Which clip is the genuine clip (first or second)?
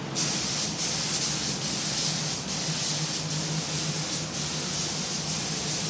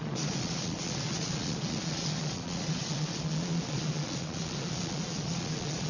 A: first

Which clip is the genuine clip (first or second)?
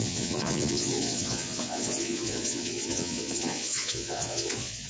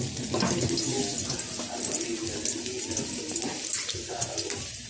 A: second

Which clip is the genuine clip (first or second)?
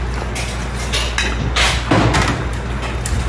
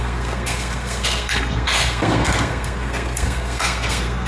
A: first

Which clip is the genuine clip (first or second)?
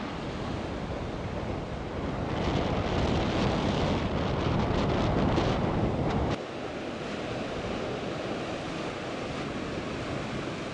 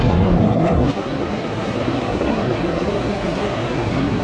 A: first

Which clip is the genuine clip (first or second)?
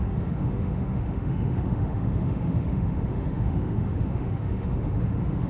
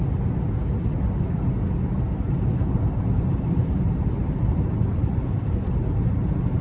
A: second